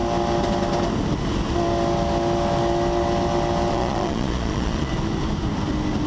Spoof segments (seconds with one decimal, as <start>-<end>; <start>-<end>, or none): 3.7-4.9